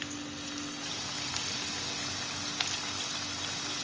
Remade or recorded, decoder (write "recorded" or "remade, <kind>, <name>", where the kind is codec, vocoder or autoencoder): recorded